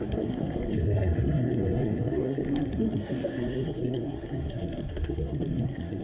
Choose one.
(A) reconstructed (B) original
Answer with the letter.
A